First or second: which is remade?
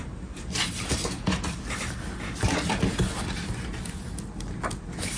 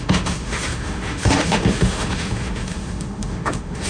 second